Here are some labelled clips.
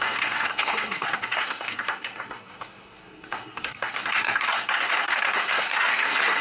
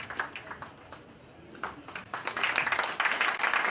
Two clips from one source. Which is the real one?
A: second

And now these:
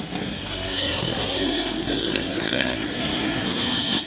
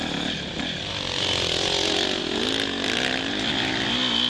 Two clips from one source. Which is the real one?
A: second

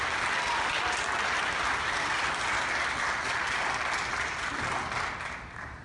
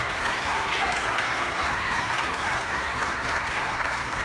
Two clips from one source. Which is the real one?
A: first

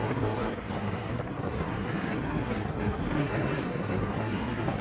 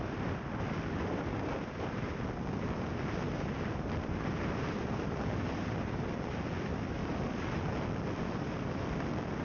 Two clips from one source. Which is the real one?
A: second